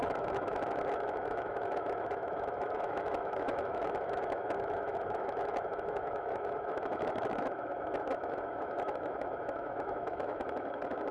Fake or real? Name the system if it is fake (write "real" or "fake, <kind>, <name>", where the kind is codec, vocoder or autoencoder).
fake, autoencoder, DAC-VAE